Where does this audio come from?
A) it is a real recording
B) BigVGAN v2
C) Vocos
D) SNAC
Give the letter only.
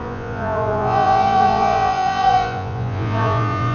C